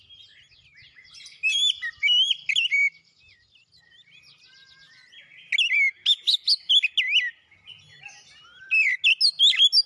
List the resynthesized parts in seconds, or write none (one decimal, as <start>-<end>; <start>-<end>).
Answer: none